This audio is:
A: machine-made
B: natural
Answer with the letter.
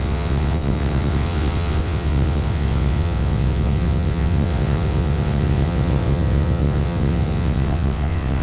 A